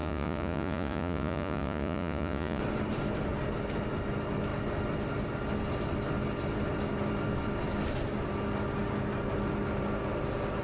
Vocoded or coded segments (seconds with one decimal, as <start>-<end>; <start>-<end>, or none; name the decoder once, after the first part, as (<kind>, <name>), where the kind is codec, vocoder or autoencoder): 0.0-2.6 (vocoder, Vocos)